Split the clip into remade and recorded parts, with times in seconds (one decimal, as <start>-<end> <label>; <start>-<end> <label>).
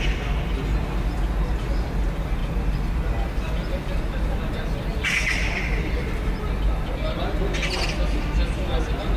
0.0-9.2 recorded